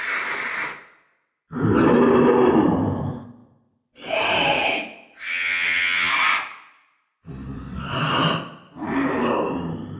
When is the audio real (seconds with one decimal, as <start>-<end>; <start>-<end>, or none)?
0.0-5.3; 6.1-10.0